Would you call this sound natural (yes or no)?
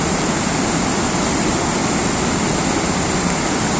yes